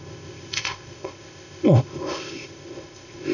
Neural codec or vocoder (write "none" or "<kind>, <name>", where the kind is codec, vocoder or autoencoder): codec, ZipCodec